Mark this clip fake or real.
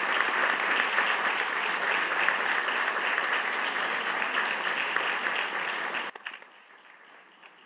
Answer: real